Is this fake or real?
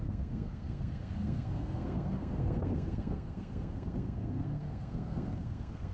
fake